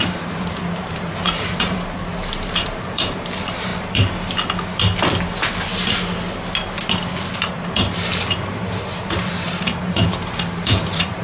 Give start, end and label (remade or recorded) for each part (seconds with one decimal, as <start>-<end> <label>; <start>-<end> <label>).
0.0-3.7 remade; 3.7-7.5 recorded; 7.5-11.2 remade